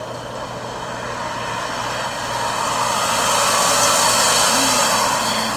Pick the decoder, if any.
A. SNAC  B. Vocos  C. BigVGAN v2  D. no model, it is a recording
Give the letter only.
D